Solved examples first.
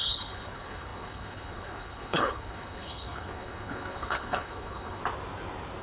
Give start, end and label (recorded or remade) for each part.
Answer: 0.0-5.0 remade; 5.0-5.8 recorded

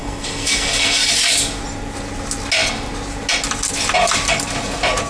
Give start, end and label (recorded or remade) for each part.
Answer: 0.0-1.1 remade; 1.1-5.1 recorded

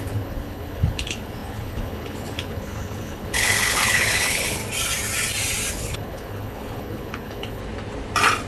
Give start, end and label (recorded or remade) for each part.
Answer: 0.0-4.6 remade; 4.6-5.7 recorded; 5.7-7.6 remade; 7.6-8.5 recorded

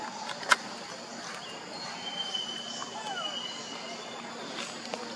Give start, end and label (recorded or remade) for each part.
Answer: 0.0-5.2 recorded

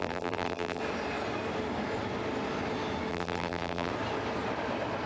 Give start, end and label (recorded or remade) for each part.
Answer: 0.0-0.8 remade; 0.8-3.1 recorded; 3.1-3.9 remade; 3.9-5.1 recorded

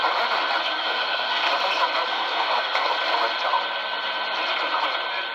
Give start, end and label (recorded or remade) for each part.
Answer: 0.0-0.7 recorded; 0.7-1.5 remade; 1.5-2.1 recorded; 2.1-2.9 remade; 2.9-5.3 recorded

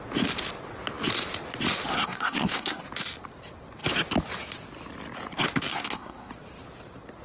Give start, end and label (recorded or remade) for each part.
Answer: 0.0-1.9 recorded; 1.9-2.8 remade; 2.8-5.7 recorded; 5.7-6.3 remade; 6.3-7.2 recorded

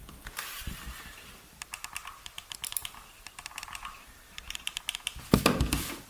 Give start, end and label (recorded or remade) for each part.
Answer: 0.0-2.2 remade; 2.2-2.8 recorded; 2.8-4.7 remade; 4.7-6.1 recorded